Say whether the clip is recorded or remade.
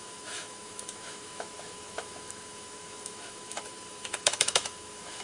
remade